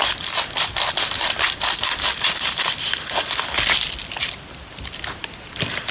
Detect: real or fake real